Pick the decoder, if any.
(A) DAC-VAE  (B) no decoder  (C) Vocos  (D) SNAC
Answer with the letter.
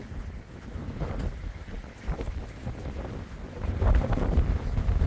B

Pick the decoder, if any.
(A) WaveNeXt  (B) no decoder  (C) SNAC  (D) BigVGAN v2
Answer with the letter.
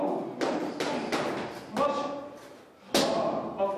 B